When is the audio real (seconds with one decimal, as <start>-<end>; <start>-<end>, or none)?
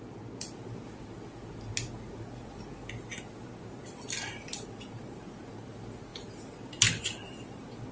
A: 0.0-7.9